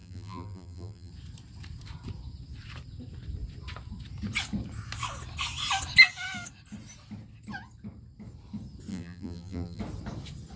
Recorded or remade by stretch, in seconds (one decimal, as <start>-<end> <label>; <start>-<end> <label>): 0.0-1.1 remade; 1.1-8.9 recorded; 8.9-9.8 remade; 9.8-10.6 recorded